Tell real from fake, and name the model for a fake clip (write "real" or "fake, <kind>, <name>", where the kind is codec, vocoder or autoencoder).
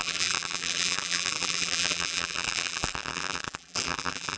fake, vocoder, BigVGAN v2